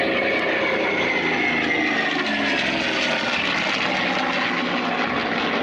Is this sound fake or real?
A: real